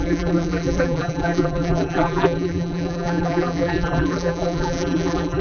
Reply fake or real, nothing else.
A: fake